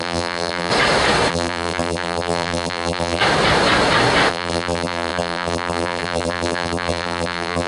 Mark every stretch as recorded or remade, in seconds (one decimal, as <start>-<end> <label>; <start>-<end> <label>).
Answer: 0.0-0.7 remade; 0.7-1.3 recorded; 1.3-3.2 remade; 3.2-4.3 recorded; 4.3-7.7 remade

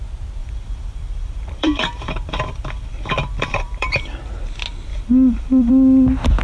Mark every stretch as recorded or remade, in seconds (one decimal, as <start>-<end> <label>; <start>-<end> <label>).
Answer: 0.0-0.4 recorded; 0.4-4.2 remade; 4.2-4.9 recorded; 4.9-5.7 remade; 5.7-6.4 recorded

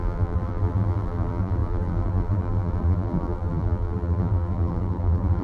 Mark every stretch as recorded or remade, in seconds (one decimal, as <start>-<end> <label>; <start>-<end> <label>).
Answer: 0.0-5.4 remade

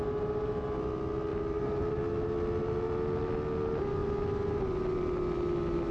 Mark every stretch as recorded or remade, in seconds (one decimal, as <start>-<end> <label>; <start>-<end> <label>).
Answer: 0.0-1.3 recorded; 1.3-2.0 remade; 2.0-5.9 recorded